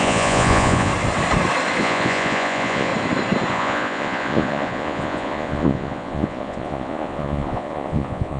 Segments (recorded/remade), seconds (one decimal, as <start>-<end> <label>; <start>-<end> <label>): 0.0-0.9 remade; 0.9-1.8 recorded; 1.8-2.9 remade; 2.9-3.5 recorded; 3.5-8.4 remade